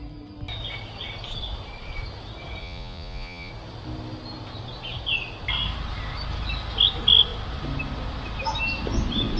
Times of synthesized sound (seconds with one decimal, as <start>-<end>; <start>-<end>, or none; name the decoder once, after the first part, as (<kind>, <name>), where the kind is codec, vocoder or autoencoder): 2.6-3.5 (vocoder, Vocos)